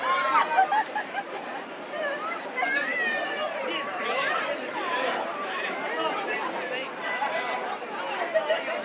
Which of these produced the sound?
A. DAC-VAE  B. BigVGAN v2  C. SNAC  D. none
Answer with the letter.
B